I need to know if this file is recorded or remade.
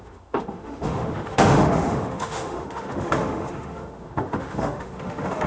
remade